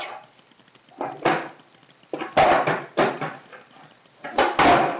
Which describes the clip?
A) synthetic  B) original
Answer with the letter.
A